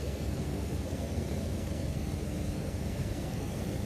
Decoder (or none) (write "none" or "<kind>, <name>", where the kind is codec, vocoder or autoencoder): codec, SNAC